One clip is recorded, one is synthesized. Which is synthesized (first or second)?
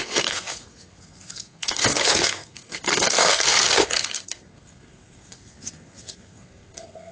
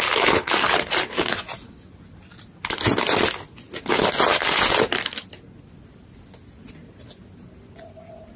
first